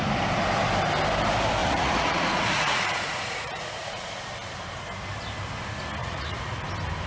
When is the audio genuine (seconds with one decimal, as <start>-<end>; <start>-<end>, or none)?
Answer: 0.0-1.6; 4.1-6.0; 6.6-7.1